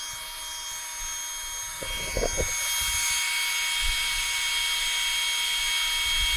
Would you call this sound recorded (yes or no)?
yes